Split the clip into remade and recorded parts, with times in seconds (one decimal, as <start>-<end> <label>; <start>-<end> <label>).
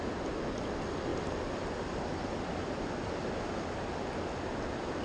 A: 0.0-5.0 recorded